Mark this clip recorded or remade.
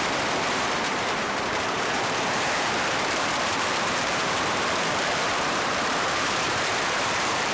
remade